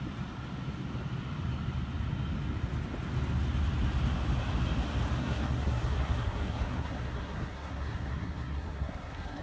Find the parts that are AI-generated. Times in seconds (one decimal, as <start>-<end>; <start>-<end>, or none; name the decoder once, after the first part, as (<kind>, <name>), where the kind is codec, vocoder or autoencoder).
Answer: 5.2-9.4 (codec, SNAC)